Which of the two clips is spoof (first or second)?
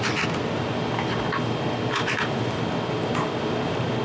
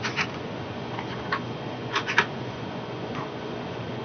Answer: second